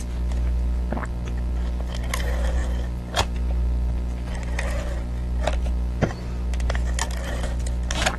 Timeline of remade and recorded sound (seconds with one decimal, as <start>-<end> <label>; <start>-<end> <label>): 0.0-8.2 recorded